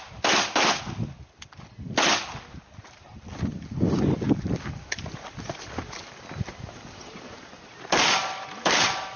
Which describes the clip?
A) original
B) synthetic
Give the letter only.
A